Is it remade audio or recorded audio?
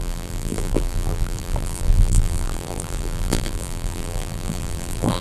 remade